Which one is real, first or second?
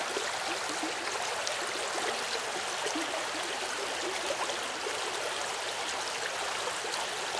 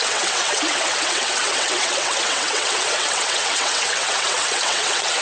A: first